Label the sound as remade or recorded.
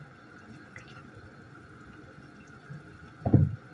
remade